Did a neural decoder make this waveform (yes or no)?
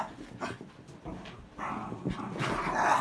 no